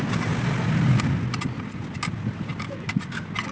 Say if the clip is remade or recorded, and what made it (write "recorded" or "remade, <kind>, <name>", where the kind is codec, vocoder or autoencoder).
recorded